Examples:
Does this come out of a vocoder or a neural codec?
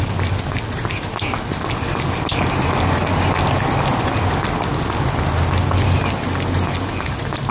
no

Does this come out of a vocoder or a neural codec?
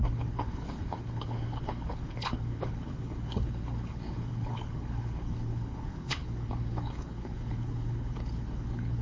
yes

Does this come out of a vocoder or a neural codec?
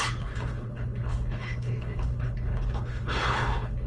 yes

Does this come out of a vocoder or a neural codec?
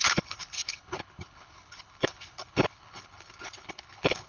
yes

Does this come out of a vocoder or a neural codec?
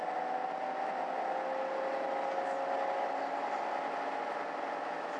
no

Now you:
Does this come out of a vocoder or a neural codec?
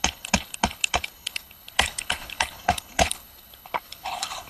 yes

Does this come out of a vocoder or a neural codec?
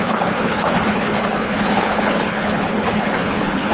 yes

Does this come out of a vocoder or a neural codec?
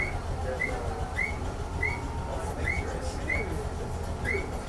no